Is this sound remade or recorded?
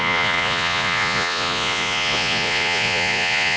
remade